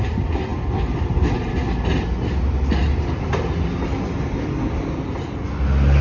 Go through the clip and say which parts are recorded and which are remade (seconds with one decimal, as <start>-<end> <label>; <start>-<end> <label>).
0.0-6.0 recorded